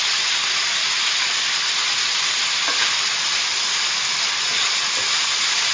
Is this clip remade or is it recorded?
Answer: recorded